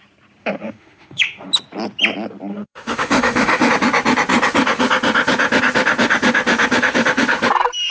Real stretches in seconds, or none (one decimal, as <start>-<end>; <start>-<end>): 0.0-0.4; 1.5-2.5; 3.7-7.9